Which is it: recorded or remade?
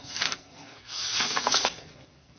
remade